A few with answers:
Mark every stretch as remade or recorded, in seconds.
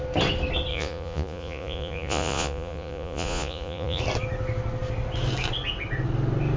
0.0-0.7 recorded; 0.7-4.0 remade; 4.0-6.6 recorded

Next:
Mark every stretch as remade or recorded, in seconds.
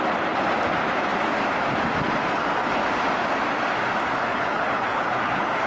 0.0-4.3 recorded; 4.3-5.7 remade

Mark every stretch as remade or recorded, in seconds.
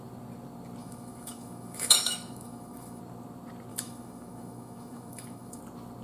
0.0-0.8 recorded; 0.8-3.0 remade; 3.0-3.7 recorded; 3.7-5.6 remade; 5.6-6.0 recorded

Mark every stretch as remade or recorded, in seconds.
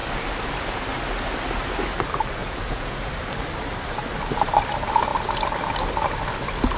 0.0-2.4 recorded; 2.4-3.1 remade; 3.1-6.8 recorded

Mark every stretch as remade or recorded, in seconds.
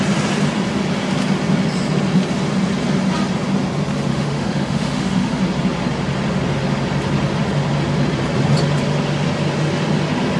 0.0-4.1 recorded; 4.1-5.4 remade; 5.4-10.4 recorded